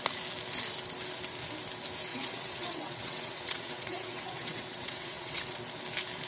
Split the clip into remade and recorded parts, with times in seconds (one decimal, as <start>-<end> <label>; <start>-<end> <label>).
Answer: 0.0-2.1 recorded; 2.1-5.6 remade; 5.6-6.3 recorded